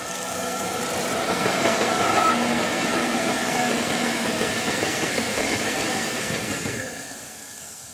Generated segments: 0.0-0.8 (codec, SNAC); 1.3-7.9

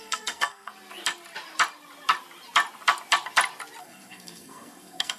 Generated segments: 0.0-0.7 (codec, SNAC); 3.8-5.2

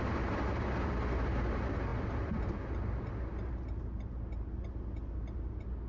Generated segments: none

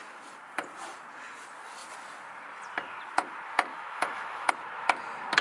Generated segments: 3.7-4.5 (autoencoder, DAC-VAE)

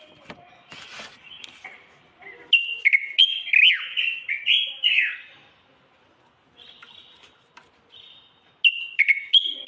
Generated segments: none